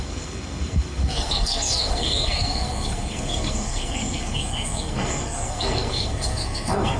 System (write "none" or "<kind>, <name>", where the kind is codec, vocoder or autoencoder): codec, SNAC